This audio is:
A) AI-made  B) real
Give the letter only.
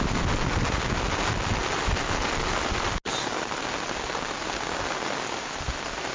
B